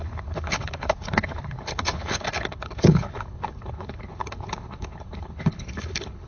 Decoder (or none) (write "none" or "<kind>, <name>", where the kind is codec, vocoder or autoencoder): codec, HILCodec